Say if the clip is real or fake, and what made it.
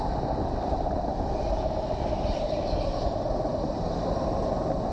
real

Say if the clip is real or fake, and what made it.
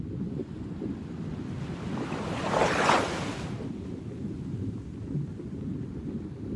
real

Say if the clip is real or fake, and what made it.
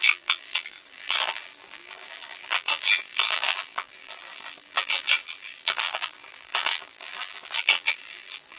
fake, vocoder, BigVGAN v2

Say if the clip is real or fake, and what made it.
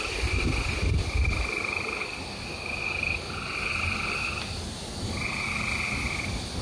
real